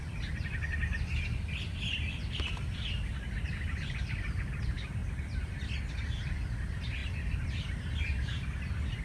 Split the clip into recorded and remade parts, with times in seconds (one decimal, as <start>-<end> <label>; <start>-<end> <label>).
0.0-5.0 recorded; 5.0-5.6 remade; 5.6-9.0 recorded